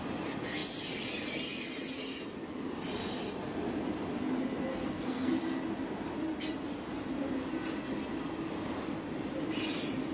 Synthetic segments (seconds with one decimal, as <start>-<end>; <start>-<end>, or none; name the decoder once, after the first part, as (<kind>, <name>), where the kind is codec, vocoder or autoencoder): 4.7-5.3 (codec, SNAC)

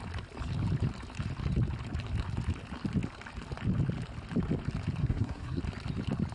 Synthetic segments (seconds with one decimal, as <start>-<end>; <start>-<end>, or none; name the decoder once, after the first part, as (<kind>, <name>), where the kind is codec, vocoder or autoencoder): 5.0-5.6 (codec, SNAC)

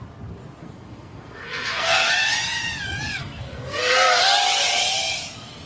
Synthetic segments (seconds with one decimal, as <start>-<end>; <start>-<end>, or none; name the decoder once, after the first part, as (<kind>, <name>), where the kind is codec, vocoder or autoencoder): 0.6-2.1 (codec, SNAC); 3.2-4.2